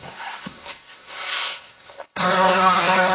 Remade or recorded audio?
remade